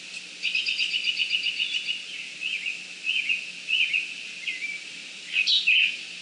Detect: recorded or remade recorded